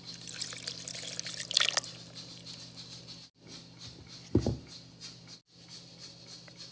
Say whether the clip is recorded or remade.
recorded